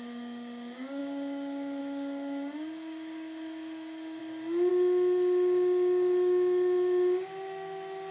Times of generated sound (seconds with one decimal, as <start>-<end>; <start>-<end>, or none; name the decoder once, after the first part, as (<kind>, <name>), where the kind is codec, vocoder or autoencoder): 0.0-4.2 (codec, DAC); 4.7-8.1